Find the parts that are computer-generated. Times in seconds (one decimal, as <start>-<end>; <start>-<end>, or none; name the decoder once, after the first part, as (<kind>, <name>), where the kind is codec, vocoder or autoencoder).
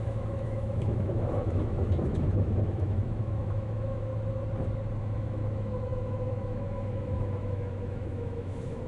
0.0-4.1 (autoencoder, DAC-VAE); 5.0-8.9